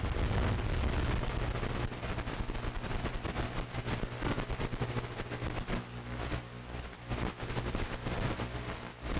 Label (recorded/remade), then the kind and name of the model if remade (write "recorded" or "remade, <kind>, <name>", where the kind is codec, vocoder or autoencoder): recorded